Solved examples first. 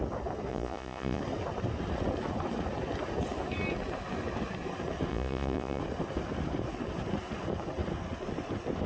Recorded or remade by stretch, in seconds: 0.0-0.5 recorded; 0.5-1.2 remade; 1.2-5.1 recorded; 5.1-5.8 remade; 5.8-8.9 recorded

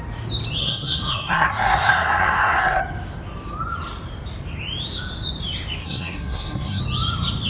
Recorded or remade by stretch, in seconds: 0.0-0.6 recorded; 0.6-2.8 remade; 2.8-5.8 recorded; 5.8-6.8 remade; 6.8-7.5 recorded

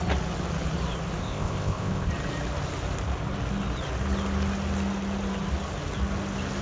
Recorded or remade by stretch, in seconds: 0.0-1.2 recorded; 1.2-2.1 remade; 2.1-6.6 recorded

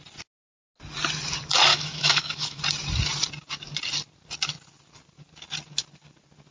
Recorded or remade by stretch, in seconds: 0.0-1.7 recorded; 1.7-2.6 remade; 2.6-6.5 recorded

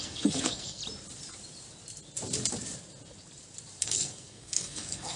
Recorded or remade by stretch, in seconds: 0.0-0.8 remade; 0.8-3.8 recorded; 3.8-5.2 remade

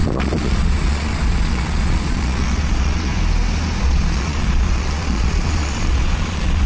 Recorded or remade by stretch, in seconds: 0.0-3.1 remade; 3.1-3.8 recorded; 3.8-6.7 remade

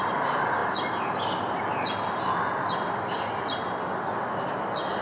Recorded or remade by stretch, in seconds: 0.0-5.0 recorded